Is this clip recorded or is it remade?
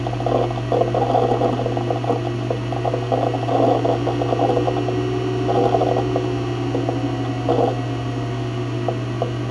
recorded